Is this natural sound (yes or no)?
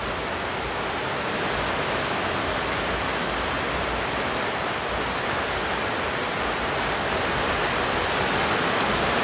yes